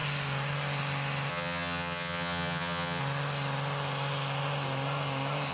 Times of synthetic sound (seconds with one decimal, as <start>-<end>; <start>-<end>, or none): 1.3-3.0